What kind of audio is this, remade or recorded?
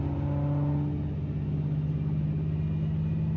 recorded